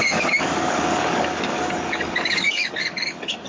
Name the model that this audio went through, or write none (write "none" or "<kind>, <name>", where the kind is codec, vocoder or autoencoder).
codec, DAC